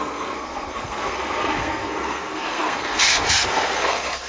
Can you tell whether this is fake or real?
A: fake